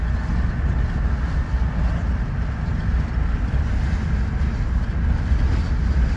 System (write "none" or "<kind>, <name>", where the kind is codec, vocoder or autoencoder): none